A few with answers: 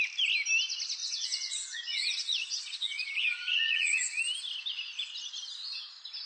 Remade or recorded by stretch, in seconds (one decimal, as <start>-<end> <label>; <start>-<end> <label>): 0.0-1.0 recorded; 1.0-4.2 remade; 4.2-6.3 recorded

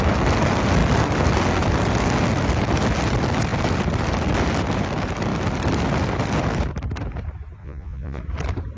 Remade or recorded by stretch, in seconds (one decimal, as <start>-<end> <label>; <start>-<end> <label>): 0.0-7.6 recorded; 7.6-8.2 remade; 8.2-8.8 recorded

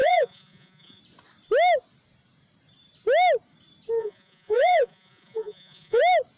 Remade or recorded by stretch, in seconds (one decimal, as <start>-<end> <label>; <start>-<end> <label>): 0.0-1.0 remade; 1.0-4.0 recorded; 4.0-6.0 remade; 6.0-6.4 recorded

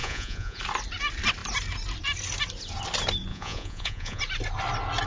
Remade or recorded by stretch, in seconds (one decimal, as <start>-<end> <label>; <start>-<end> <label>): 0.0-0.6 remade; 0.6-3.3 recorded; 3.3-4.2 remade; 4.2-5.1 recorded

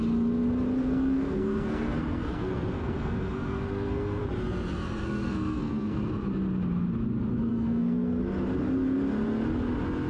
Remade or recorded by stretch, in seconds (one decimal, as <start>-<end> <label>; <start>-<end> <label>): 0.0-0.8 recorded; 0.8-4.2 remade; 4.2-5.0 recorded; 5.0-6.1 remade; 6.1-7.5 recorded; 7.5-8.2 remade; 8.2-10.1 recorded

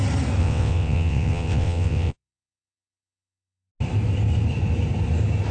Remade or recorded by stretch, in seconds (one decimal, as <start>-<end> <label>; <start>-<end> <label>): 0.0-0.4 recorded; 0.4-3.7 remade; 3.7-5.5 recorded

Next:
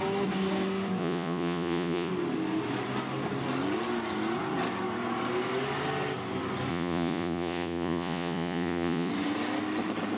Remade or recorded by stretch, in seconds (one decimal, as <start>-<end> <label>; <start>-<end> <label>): 0.0-1.0 recorded; 1.0-2.1 remade; 2.1-6.7 recorded; 6.7-9.1 remade; 9.1-10.2 recorded